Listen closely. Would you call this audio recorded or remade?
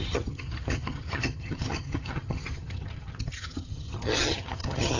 remade